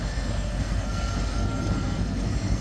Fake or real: fake